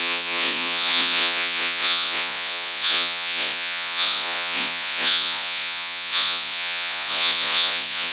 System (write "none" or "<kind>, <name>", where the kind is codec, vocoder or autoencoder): vocoder, Vocos